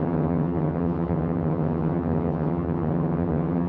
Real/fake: fake